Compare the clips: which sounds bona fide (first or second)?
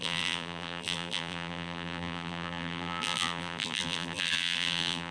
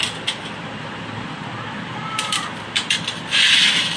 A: second